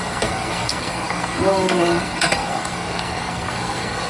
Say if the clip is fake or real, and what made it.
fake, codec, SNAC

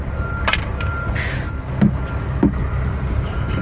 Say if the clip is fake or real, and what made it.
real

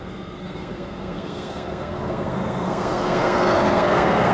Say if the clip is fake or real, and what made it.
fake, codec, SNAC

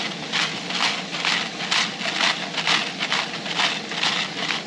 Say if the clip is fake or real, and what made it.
real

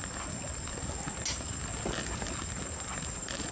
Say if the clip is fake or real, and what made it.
real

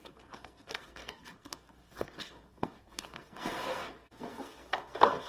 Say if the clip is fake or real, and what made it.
fake, codec, SNAC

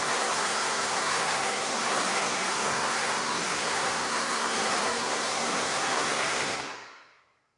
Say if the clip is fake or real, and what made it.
fake, codec, SNAC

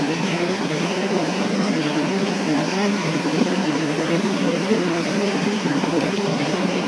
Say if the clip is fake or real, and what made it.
fake, codec, SNAC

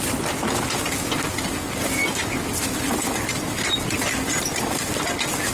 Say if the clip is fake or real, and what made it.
real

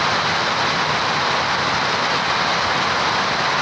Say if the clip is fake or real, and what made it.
real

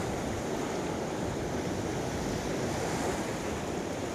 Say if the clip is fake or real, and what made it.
real